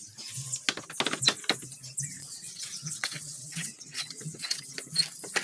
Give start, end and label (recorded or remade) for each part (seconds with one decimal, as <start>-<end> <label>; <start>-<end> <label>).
0.0-2.2 recorded; 2.2-4.6 remade; 4.6-5.4 recorded